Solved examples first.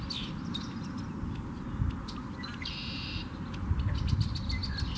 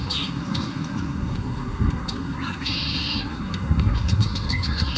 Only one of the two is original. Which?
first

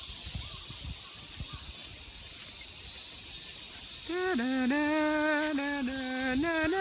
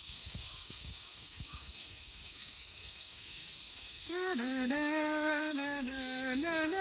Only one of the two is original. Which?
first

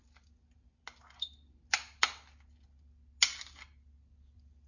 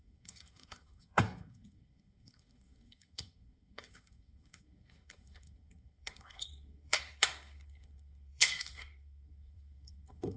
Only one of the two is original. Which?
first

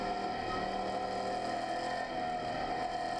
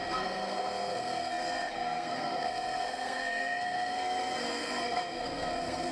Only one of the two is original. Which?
first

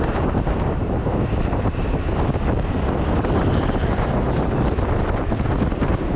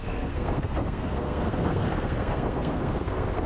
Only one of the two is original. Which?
first